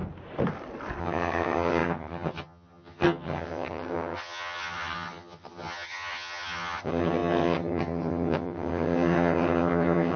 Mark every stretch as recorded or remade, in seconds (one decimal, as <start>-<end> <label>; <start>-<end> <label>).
0.0-1.0 recorded; 1.0-10.2 remade